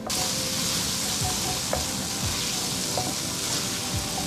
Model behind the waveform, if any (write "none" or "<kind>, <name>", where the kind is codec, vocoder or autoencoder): none